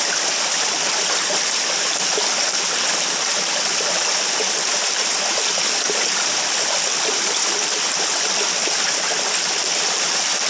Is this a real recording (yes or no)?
yes